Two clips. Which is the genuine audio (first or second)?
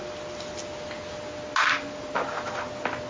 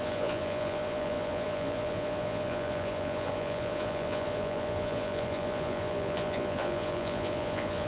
first